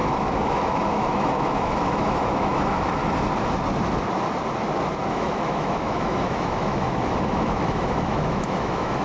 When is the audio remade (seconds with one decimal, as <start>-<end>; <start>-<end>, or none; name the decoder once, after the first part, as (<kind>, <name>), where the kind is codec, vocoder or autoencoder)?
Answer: 0.0-3.0 (autoencoder, DAC-VAE); 5.1-9.0